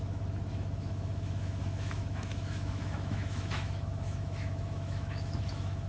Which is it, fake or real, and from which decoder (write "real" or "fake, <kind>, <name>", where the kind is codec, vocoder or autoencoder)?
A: fake, autoencoder, DAC-VAE